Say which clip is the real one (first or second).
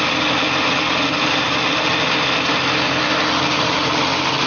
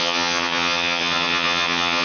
first